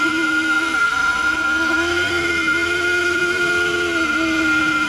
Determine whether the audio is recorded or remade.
recorded